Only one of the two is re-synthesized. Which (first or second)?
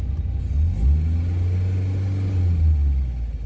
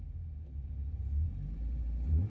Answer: second